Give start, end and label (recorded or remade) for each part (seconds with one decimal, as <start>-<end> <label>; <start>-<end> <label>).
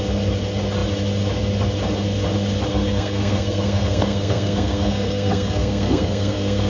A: 0.0-2.7 recorded; 2.7-6.7 remade